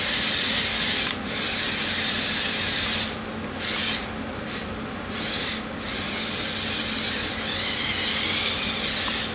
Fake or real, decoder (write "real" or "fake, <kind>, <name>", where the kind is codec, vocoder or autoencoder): real